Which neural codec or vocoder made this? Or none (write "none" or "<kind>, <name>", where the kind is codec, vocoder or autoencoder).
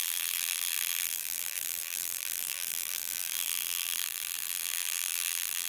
vocoder, BigVGAN v2